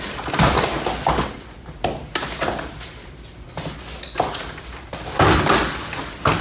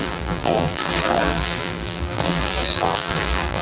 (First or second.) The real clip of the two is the first